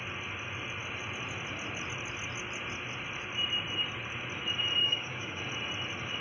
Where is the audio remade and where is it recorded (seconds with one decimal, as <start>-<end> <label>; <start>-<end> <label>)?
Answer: 0.0-4.8 recorded; 4.8-5.4 remade; 5.4-6.2 recorded